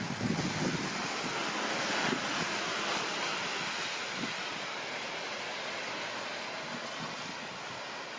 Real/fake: real